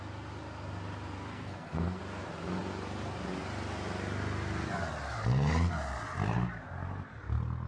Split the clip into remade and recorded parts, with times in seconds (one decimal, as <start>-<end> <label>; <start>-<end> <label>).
0.0-1.3 recorded; 1.3-2.0 remade; 2.0-7.7 recorded